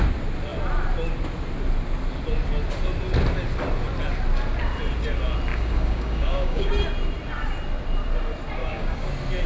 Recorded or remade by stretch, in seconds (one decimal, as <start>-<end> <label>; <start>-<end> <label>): 0.0-5.5 recorded; 5.5-6.7 remade; 6.7-8.6 recorded; 8.6-9.1 remade; 9.1-9.5 recorded